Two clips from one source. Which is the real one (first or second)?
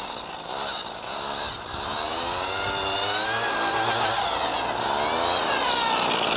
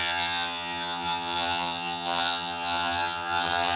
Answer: first